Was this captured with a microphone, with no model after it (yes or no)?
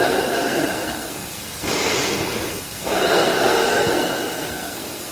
no